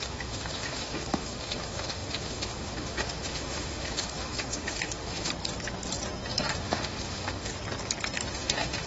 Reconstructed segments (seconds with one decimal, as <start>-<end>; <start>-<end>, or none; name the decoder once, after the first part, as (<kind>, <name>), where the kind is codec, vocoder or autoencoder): 0.0-5.3 (autoencoder, DAC-VAE); 6.3-7.5; 8.3-8.9